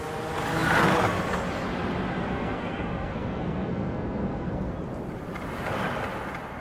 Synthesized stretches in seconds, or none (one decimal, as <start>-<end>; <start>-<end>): 2.2-4.7